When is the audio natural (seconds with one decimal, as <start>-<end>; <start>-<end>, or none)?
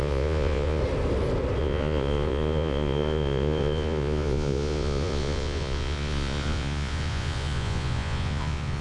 0.8-1.6